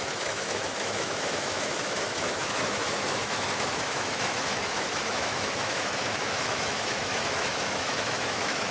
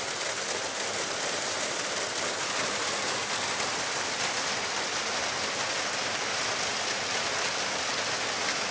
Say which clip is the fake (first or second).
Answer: first